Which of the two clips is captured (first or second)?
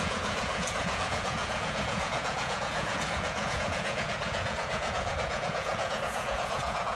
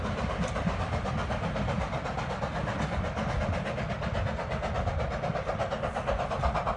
second